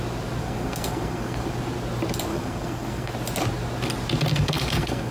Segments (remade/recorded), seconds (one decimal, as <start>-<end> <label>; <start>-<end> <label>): 0.0-0.4 recorded; 0.4-1.5 remade; 1.5-2.3 recorded; 2.3-3.1 remade; 3.1-4.3 recorded; 4.3-5.1 remade